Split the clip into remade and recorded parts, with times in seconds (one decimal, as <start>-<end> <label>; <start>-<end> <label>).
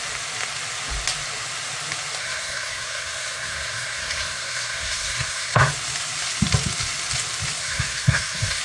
0.0-2.2 recorded; 2.2-5.7 remade; 5.7-7.6 recorded; 7.6-8.6 remade